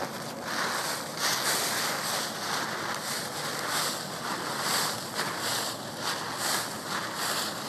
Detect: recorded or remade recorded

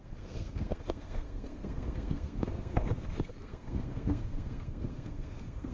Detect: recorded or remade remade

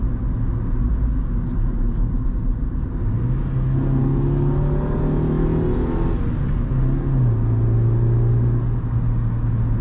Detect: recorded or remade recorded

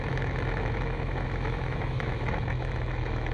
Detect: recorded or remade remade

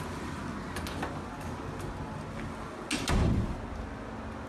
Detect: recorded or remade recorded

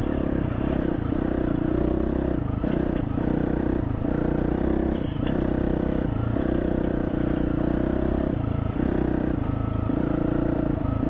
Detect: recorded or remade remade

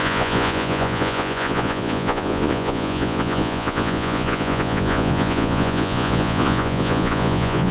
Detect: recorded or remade remade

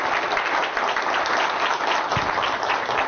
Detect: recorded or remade recorded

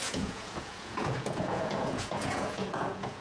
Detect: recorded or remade remade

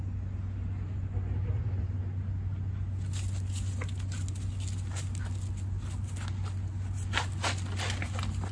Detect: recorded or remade recorded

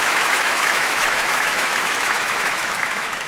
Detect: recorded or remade remade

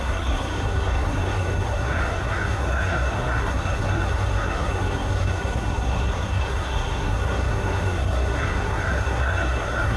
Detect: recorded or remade remade